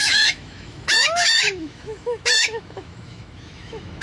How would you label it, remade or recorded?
remade